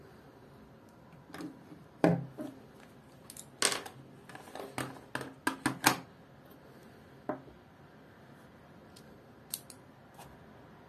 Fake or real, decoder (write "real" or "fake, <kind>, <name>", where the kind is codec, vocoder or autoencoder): real